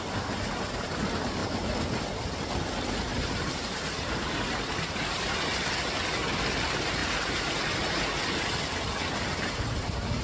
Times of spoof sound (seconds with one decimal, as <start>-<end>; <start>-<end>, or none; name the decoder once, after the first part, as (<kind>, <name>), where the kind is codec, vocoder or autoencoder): 3.1-5.7 (vocoder, BigVGAN v2)